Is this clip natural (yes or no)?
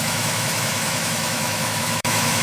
no